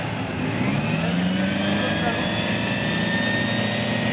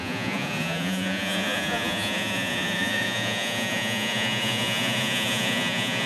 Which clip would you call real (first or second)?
first